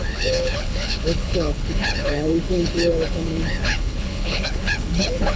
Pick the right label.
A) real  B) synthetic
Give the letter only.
B